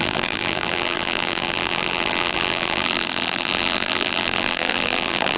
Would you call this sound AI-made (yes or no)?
yes